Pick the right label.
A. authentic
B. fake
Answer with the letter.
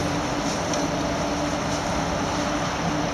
A